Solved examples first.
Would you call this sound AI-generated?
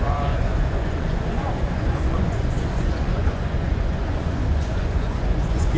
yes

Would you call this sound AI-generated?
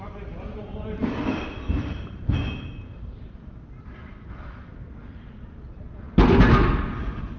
no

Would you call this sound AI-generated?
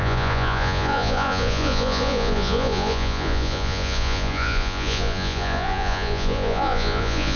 yes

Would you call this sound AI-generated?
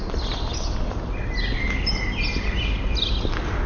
no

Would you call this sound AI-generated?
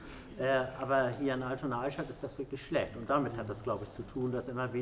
no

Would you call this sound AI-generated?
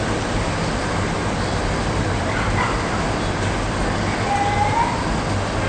no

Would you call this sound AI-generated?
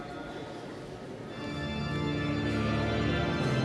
no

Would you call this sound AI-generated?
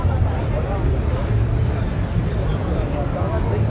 no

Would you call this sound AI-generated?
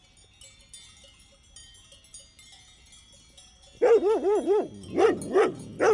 no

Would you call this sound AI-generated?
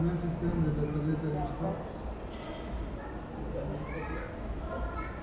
no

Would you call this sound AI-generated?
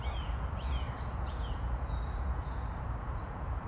yes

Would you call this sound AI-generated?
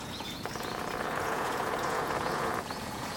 yes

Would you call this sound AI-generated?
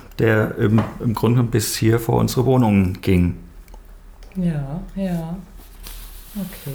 no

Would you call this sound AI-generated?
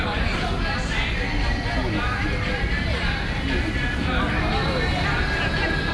no